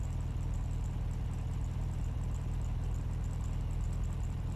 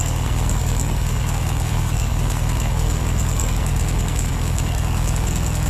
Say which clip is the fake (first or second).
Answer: second